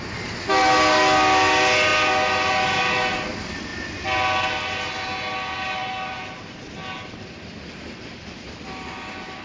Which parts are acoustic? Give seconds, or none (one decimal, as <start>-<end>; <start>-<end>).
0.0-9.4